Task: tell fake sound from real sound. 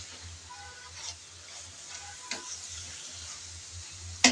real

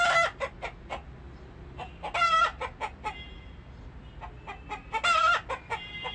real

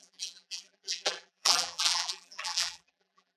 fake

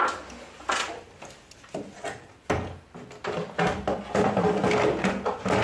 real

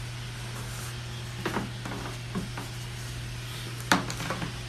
real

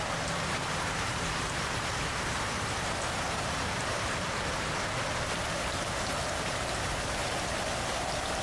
fake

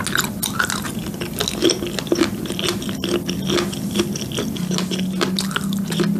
real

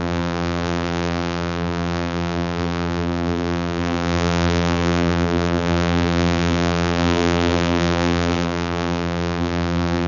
fake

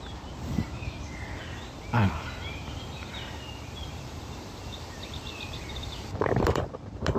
fake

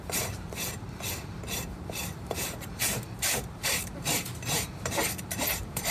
fake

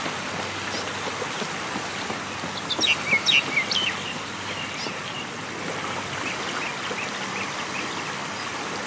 real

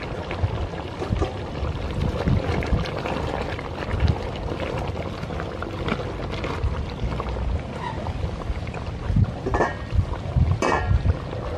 real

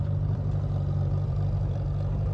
fake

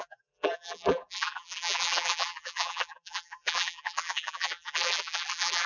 fake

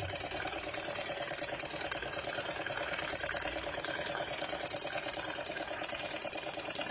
fake